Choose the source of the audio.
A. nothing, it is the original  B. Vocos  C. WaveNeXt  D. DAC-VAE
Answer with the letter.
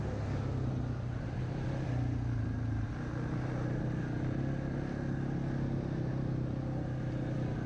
A